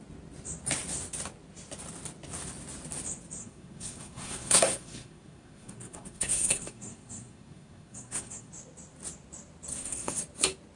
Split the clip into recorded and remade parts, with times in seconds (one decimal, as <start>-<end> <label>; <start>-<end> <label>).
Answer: 0.0-3.4 recorded; 3.4-8.5 remade; 8.5-9.7 recorded; 9.7-10.2 remade; 10.2-10.8 recorded